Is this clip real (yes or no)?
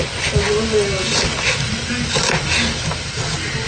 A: yes